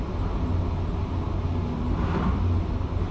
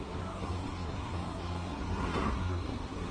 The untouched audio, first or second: first